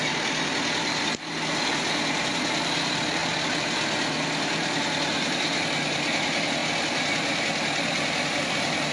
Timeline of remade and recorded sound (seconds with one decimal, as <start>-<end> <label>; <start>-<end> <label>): 0.0-8.9 recorded